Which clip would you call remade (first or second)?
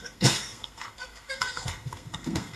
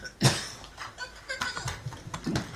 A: first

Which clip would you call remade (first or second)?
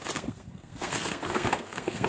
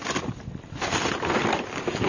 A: first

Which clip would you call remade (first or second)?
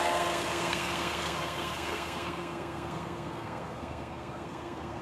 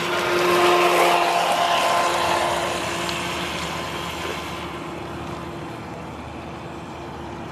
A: first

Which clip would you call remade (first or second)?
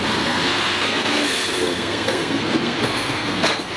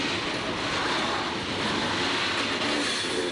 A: first